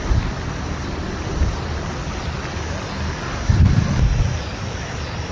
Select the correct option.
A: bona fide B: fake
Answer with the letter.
A